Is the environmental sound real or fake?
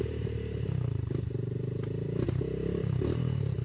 fake